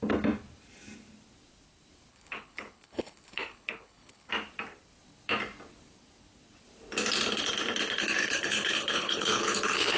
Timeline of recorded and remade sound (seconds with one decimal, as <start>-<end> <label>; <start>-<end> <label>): 0.0-2.1 recorded; 2.1-4.3 remade; 4.3-8.2 recorded; 8.2-10.0 remade